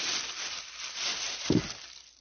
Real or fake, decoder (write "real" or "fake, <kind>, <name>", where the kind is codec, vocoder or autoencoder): real